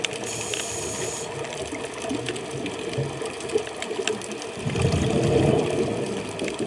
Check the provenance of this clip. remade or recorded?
recorded